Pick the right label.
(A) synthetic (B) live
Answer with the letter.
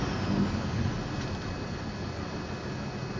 B